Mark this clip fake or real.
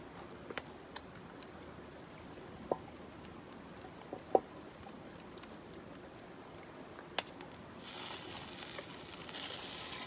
real